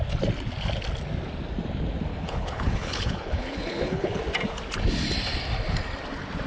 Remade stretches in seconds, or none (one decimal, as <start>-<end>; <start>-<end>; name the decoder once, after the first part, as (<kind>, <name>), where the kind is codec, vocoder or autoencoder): 2.1-4.2 (codec, HILCodec)